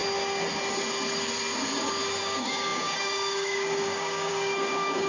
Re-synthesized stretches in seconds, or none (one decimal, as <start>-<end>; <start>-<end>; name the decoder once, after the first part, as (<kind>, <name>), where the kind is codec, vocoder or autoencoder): 2.2-5.1 (codec, DAC)